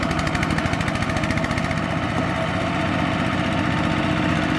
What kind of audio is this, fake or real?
real